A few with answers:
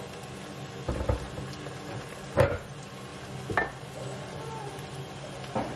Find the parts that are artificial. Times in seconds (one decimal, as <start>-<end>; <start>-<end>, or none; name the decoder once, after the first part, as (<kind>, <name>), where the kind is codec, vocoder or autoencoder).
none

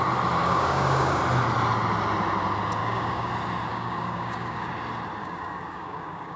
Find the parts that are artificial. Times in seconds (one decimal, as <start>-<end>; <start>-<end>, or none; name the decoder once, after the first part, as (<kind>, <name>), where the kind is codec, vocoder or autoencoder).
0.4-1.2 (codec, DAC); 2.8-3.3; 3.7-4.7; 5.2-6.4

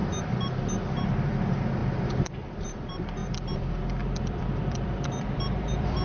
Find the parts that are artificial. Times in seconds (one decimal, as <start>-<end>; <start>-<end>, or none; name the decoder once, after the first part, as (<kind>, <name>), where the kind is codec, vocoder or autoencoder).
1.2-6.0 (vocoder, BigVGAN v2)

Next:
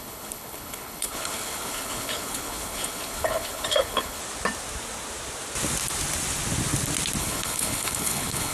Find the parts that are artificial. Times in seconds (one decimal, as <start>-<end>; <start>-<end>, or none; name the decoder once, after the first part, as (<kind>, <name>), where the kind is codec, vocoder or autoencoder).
0.0-4.2 (codec, HILCodec); 7.2-8.5

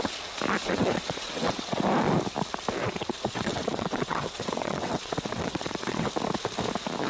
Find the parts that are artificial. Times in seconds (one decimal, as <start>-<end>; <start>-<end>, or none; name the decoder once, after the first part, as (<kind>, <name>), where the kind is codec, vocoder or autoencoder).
0.6-1.8 (vocoder, WaveNeXt); 2.8-6.1